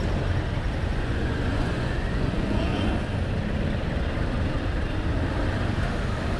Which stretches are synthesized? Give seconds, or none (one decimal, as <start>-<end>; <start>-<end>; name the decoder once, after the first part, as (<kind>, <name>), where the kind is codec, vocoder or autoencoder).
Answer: 0.9-2.9 (vocoder, Vocos)